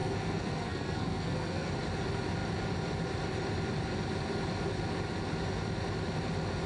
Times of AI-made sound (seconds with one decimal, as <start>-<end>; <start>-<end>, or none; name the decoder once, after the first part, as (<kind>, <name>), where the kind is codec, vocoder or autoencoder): 0.0-1.7 (codec, SNAC)